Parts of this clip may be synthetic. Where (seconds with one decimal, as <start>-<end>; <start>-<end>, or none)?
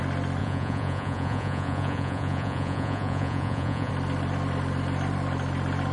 0.4-3.9